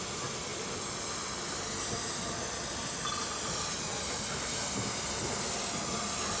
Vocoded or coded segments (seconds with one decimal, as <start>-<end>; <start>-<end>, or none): none